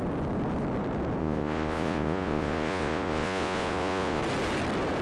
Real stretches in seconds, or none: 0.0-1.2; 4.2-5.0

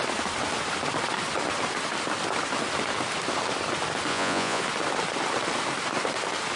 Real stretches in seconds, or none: 0.0-4.1; 4.6-6.6

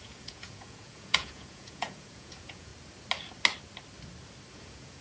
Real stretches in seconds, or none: 2.7-4.5